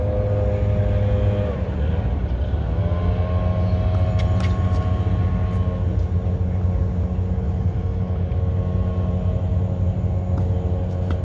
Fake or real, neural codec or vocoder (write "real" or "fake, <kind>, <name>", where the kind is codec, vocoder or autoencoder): real